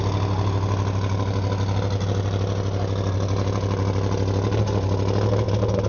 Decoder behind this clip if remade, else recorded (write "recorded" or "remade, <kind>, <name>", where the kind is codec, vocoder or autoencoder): recorded